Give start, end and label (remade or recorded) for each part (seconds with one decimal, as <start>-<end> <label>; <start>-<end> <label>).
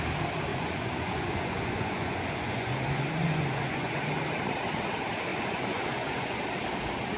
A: 0.0-0.5 recorded; 0.5-4.0 remade; 4.0-5.3 recorded; 5.3-6.4 remade; 6.4-7.2 recorded